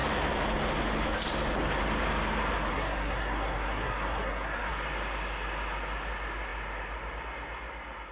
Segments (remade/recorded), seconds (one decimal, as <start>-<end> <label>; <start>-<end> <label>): 0.0-2.7 recorded; 2.7-4.7 remade; 4.7-8.1 recorded